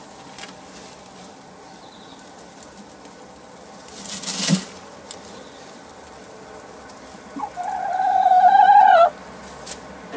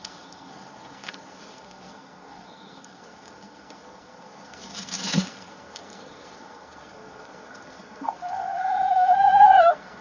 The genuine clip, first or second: first